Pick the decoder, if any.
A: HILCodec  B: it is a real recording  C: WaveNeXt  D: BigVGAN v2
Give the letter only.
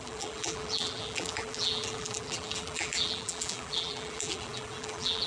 D